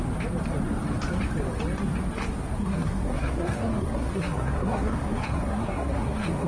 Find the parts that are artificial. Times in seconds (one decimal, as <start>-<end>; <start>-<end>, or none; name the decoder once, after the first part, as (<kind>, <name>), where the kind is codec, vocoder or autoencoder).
2.6-6.5 (codec, SNAC)